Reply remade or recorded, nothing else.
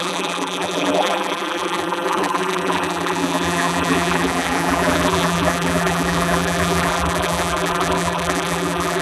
remade